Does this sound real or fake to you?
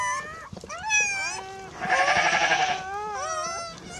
real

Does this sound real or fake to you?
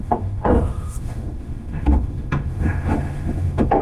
fake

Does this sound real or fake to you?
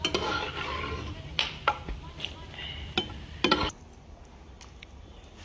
real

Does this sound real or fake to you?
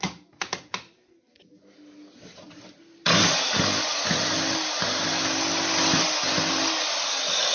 real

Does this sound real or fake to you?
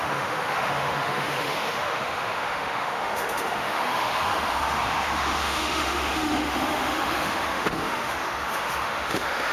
fake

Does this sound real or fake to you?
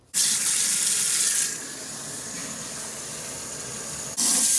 real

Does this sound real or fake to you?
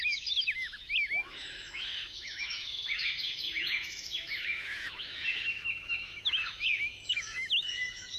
fake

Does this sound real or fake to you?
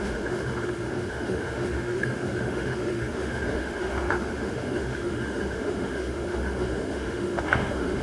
fake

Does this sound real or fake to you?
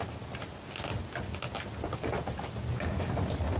real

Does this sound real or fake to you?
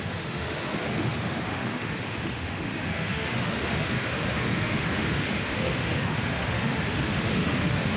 fake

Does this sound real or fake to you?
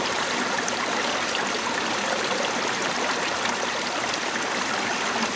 real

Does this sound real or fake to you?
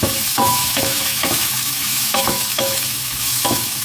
fake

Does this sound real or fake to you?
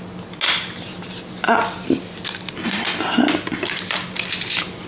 real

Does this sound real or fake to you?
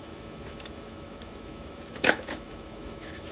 fake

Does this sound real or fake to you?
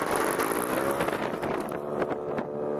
real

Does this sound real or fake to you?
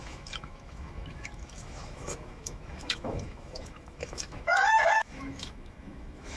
fake